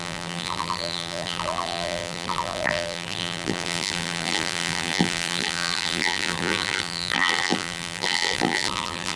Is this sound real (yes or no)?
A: no